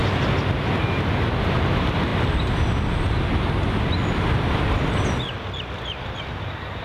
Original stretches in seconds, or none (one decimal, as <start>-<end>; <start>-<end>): 0.0-6.8